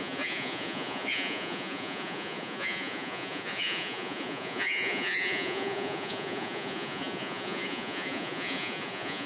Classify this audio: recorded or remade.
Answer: remade